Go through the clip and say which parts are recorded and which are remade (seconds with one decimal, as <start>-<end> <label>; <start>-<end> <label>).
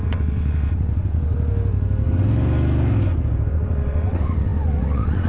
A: 0.0-1.5 remade; 1.5-3.5 recorded; 3.5-5.3 remade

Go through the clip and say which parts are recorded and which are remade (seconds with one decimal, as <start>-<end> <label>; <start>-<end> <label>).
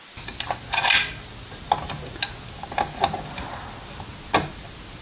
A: 0.0-5.0 recorded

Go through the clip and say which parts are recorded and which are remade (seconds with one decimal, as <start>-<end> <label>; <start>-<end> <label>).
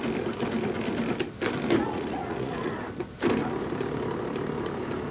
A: 0.0-1.8 recorded; 1.8-2.7 remade; 2.7-5.1 recorded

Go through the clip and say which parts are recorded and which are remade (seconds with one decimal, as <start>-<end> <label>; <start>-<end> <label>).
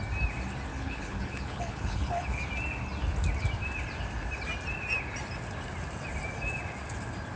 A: 0.0-0.7 recorded; 0.7-2.4 remade; 2.4-7.4 recorded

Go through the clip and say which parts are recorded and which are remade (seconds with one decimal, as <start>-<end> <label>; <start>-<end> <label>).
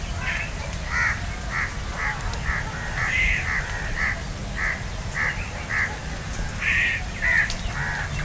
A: 0.0-8.2 recorded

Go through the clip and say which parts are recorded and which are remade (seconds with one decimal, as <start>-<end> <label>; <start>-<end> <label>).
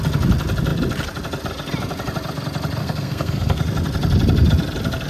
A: 0.0-2.8 recorded; 2.8-3.6 remade; 3.6-5.1 recorded